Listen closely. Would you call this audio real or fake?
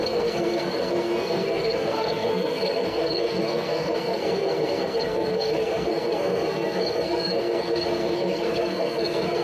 fake